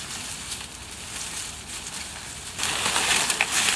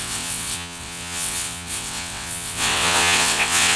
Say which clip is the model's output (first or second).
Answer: second